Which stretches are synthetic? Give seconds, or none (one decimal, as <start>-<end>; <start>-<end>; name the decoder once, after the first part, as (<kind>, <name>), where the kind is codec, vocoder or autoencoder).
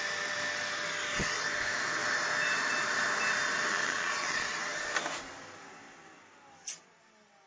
3.7-4.5 (vocoder, Vocos)